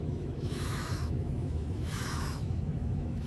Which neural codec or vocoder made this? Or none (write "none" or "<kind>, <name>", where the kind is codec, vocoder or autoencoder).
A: autoencoder, DAC-VAE